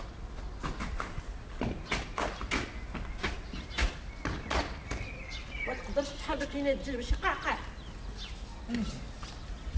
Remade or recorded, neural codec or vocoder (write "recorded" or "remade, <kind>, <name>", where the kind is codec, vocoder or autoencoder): recorded